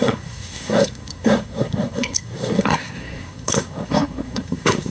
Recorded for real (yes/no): no